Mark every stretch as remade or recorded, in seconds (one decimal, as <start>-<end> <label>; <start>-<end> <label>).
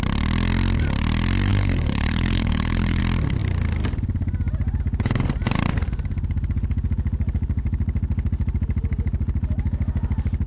0.0-1.5 recorded; 1.5-3.0 remade; 3.0-10.5 recorded